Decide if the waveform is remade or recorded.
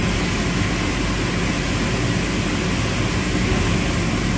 recorded